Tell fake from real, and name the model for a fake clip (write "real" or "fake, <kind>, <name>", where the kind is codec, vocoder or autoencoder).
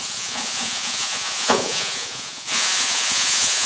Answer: fake, vocoder, Vocos